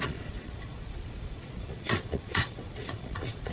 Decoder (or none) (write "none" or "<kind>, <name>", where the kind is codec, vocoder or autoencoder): vocoder, Vocos